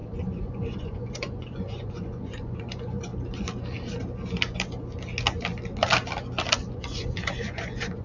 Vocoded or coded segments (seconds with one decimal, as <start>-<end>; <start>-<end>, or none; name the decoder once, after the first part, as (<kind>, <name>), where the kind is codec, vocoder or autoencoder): 0.0-3.1 (vocoder, Vocos); 6.7-8.0